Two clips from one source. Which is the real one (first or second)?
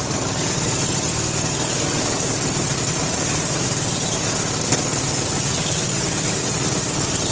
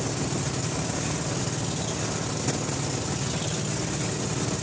second